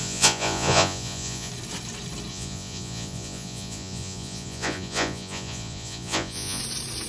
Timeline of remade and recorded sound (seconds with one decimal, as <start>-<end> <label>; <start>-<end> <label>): 0.0-1.5 remade; 1.5-2.3 recorded; 2.3-6.6 remade; 6.6-7.1 recorded